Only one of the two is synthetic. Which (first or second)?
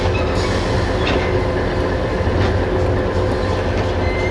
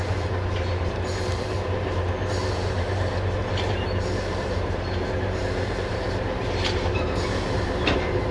second